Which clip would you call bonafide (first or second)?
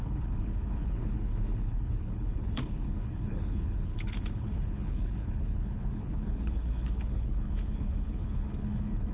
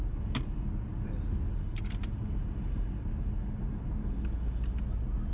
second